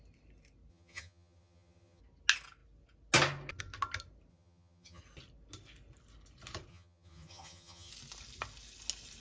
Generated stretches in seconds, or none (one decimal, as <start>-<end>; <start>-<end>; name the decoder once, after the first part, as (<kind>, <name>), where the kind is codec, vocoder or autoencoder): 0.7-2.0 (vocoder, HiFi-GAN); 4.3-5.0; 6.7-7.9